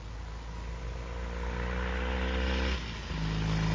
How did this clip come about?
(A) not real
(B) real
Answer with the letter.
B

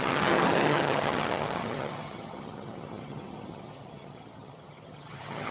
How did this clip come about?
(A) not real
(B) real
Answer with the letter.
A